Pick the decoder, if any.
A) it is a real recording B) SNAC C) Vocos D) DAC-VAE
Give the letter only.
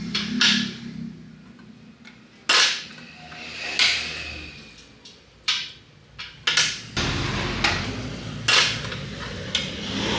A